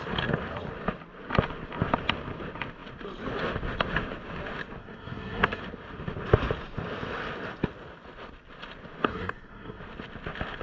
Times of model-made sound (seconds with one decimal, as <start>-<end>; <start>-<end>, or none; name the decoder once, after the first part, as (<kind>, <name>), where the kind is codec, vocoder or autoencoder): 4.8-5.6 (codec, SNAC); 9.1-9.8